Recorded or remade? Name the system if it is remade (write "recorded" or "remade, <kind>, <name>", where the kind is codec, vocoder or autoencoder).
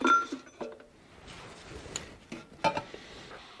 recorded